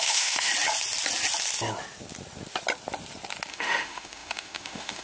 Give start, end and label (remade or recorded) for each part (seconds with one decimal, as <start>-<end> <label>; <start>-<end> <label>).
0.0-0.5 remade; 0.5-3.5 recorded; 3.5-5.0 remade